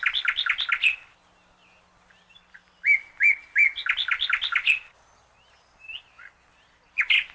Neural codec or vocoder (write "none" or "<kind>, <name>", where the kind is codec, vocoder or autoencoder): none